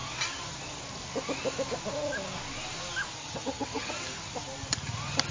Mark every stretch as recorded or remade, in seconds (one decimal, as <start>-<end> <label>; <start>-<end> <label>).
0.0-3.2 recorded; 3.2-3.9 remade; 3.9-5.3 recorded